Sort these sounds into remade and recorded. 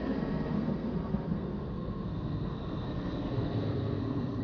remade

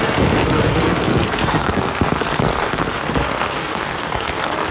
remade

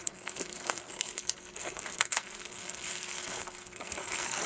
remade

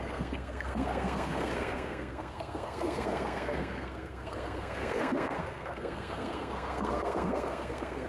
remade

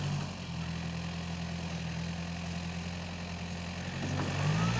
recorded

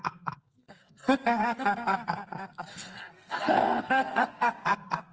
remade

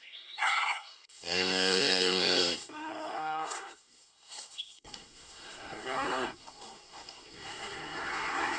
remade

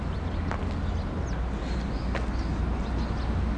recorded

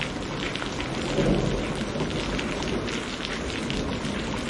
recorded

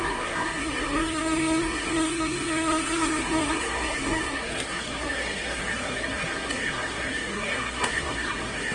remade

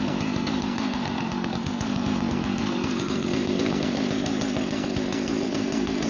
remade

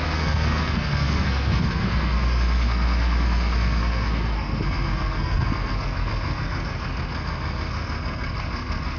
remade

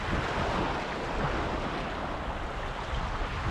recorded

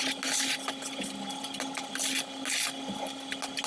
recorded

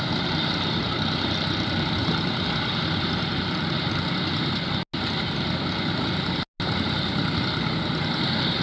recorded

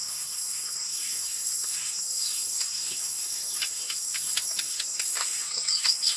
remade